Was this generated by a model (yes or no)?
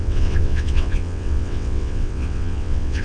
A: yes